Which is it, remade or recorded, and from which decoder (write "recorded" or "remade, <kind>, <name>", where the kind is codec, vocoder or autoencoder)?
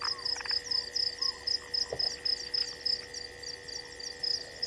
recorded